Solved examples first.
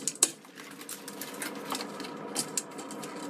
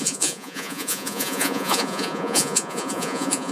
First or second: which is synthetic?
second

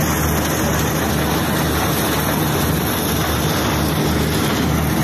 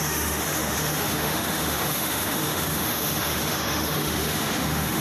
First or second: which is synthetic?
second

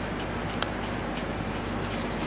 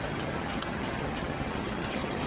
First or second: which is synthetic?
second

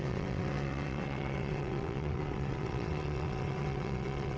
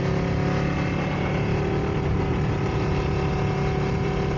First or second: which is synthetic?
first